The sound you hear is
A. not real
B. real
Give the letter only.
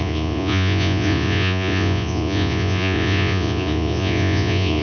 A